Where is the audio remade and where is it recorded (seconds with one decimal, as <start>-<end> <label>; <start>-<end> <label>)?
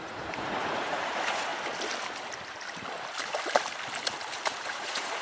0.0-1.5 remade; 1.5-4.5 recorded; 4.5-5.2 remade